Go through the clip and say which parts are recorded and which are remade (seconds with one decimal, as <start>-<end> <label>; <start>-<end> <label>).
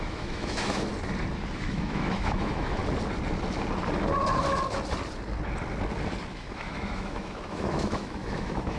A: 0.0-0.9 remade; 0.9-1.5 recorded; 1.5-2.8 remade; 2.8-6.3 recorded; 6.3-8.8 remade